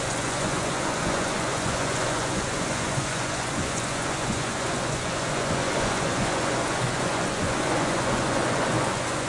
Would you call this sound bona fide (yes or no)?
no